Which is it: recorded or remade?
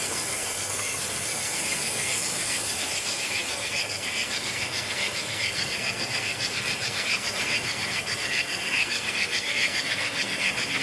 remade